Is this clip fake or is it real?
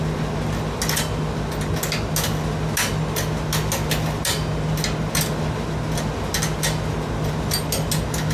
real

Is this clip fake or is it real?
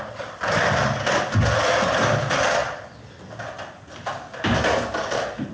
real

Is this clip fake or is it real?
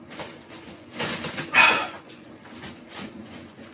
fake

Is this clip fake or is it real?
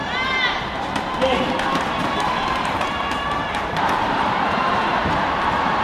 fake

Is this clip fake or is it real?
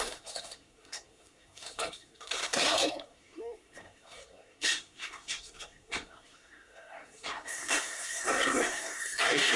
fake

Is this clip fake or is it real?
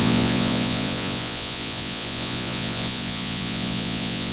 fake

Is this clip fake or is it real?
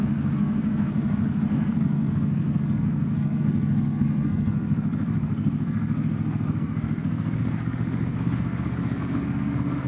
fake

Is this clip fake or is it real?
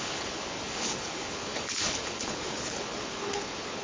fake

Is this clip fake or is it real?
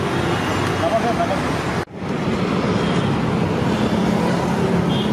real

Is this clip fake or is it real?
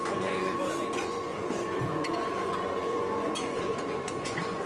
fake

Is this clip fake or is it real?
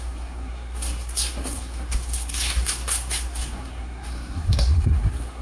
fake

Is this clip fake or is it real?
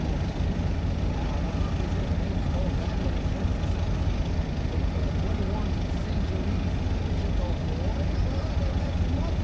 real